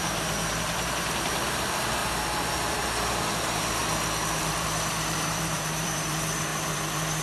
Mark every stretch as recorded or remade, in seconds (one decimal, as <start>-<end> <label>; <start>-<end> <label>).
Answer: 0.0-2.0 remade; 2.0-2.5 recorded; 2.5-3.8 remade; 3.8-4.4 recorded; 4.4-7.2 remade